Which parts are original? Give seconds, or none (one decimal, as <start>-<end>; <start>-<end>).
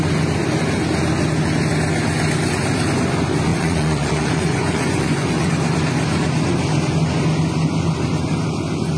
0.0-3.5; 5.5-9.0